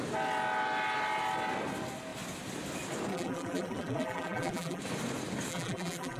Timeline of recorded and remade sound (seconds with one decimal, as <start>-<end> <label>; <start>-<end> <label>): 0.0-3.1 recorded; 3.1-4.8 remade; 4.8-5.5 recorded; 5.5-6.2 remade